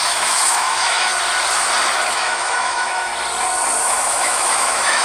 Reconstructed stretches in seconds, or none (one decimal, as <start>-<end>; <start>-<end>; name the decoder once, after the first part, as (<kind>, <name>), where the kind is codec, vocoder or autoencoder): 0.0-1.1 (autoencoder, DAC-VAE); 2.1-3.1; 3.8-5.0